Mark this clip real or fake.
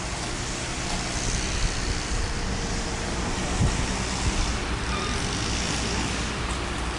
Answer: real